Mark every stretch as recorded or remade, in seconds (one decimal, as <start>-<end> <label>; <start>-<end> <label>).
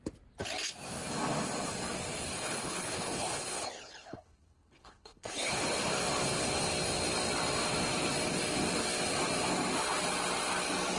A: 0.0-2.3 recorded; 2.3-5.9 remade; 5.9-11.0 recorded